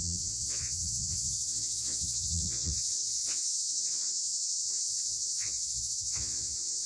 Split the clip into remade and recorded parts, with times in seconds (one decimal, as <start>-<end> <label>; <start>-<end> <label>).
0.0-6.9 remade